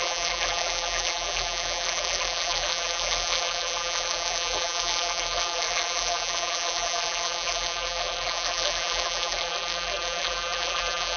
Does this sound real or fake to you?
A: fake